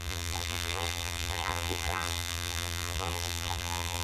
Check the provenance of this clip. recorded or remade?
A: remade